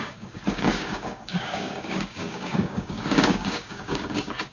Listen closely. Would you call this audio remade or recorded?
remade